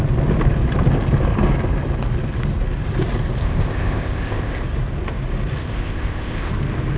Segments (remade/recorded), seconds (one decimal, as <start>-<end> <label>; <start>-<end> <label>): 0.0-3.4 recorded; 3.4-4.6 remade; 4.6-5.6 recorded; 5.6-6.5 remade; 6.5-7.0 recorded